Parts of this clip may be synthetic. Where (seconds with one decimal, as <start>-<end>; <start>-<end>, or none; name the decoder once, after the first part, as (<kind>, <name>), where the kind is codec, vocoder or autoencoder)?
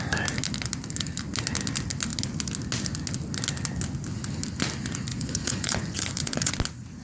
5.1-6.5 (vocoder, Vocos)